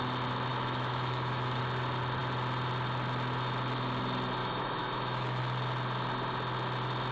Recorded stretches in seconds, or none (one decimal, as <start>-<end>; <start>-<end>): 0.0-0.5; 1.6-4.4; 5.4-7.1